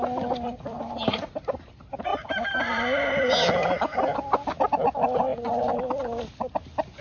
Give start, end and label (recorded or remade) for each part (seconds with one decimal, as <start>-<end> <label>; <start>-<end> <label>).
0.0-7.0 recorded